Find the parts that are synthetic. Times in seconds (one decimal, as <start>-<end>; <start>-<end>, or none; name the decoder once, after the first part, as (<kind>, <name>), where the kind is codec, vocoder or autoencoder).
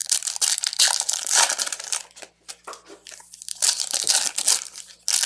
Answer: 0.0-2.5 (vocoder, BigVGAN v2); 3.5-4.1